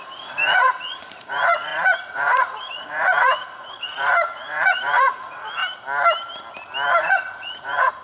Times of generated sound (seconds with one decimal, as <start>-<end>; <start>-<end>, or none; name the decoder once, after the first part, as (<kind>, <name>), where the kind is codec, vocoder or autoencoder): 0.0-5.6 (vocoder, Vocos); 7.0-8.0